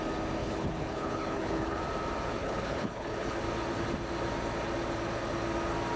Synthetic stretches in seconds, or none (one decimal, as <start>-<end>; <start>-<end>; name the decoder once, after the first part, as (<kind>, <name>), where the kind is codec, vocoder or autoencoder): 0.4-1.8 (codec, HILCodec); 2.4-3.4